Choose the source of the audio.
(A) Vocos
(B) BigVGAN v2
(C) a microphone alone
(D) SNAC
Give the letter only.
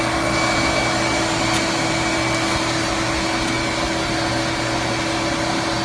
C